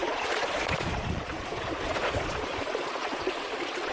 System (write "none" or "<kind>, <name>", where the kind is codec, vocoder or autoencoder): vocoder, Vocos